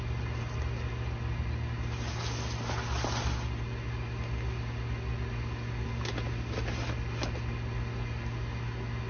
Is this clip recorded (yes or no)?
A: yes